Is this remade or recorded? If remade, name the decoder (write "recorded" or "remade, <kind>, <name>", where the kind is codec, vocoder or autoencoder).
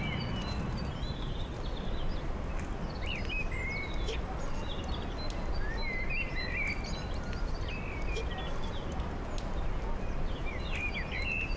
recorded